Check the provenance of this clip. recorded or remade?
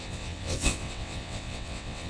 remade